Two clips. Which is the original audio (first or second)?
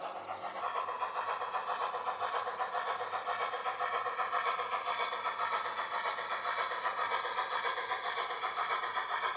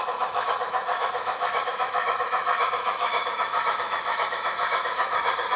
first